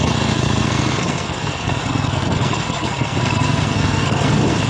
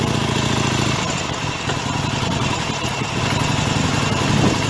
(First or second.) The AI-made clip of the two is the first